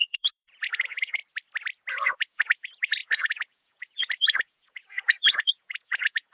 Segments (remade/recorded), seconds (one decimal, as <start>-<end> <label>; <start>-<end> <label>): 0.0-1.2 remade; 1.2-1.9 recorded; 1.9-6.3 remade